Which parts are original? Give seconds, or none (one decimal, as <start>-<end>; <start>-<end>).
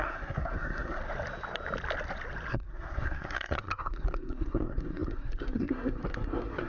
1.0-2.5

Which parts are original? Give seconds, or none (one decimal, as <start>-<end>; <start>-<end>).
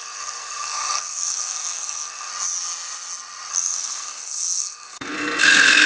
2.3-3.5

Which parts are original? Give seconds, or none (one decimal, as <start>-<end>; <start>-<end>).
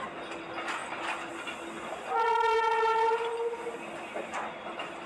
0.0-5.1